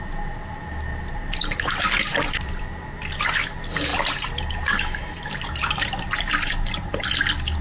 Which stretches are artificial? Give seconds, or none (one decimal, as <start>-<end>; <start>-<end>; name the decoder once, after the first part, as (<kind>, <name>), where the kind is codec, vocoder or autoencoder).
0.9-2.6 (vocoder, BigVGAN v2); 3.9-7.1

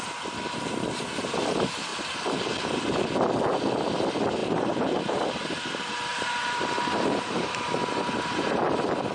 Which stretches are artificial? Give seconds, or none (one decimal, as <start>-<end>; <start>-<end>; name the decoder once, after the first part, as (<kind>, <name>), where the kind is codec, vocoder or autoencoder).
4.4-5.3 (vocoder, BigVGAN v2); 6.1-8.6

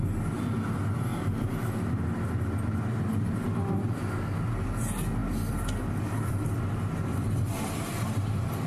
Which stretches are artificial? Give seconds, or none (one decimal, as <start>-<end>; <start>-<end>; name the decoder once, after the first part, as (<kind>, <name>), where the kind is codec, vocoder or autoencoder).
none

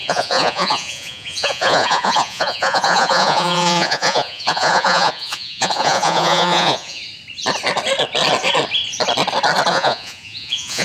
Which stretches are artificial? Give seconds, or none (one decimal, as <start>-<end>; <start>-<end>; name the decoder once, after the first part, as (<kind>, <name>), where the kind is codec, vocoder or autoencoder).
0.0-7.0 (vocoder, Vocos); 9.7-10.8